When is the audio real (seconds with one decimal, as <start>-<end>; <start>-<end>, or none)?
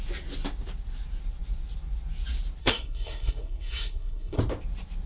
0.0-2.6; 4.4-5.1